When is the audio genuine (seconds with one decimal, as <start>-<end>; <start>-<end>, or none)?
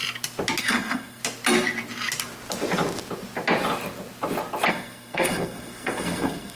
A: 0.0-0.6; 1.2-4.7